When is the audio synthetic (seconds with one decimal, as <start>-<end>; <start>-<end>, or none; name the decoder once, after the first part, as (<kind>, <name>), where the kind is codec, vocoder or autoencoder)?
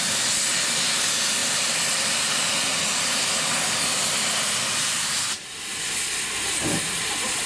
none